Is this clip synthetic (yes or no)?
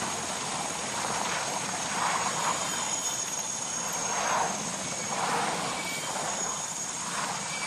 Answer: no